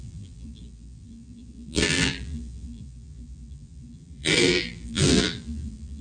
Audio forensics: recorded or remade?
remade